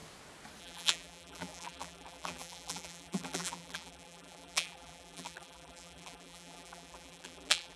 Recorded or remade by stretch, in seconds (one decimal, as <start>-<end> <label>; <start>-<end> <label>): 0.0-0.6 recorded; 0.6-7.8 remade